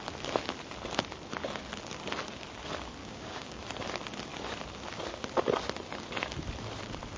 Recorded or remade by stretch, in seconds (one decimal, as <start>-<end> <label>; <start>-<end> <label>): 0.0-3.0 recorded; 3.0-3.6 remade; 3.6-7.2 recorded

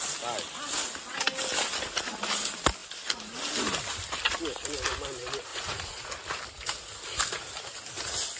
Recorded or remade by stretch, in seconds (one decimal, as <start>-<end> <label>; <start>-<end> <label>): 0.0-5.5 recorded; 5.5-6.1 remade; 6.1-8.4 recorded